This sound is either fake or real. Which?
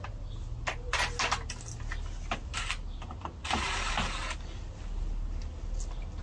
real